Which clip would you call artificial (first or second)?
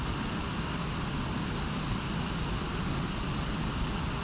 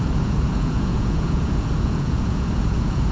second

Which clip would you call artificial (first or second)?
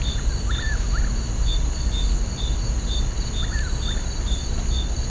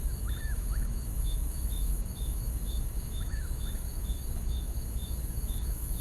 second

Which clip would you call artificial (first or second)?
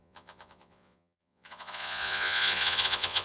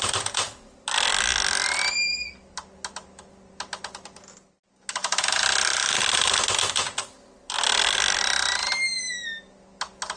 first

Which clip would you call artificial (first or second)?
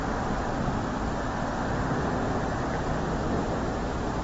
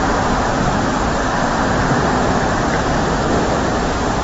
second